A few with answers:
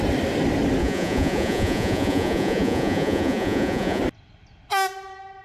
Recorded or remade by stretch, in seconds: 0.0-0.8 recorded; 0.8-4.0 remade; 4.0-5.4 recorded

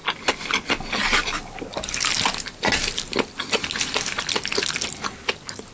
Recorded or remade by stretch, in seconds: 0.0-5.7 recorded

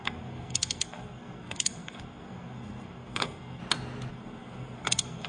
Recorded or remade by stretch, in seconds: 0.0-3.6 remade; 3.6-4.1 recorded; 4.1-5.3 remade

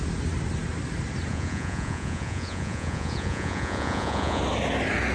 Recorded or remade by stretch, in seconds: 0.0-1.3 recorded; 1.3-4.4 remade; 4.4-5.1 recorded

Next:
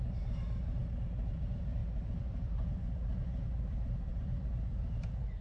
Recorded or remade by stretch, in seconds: 0.0-0.8 remade; 0.8-1.3 recorded; 1.3-5.4 remade